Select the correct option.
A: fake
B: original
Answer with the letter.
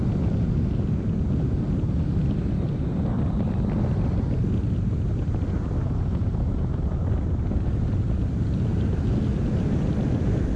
B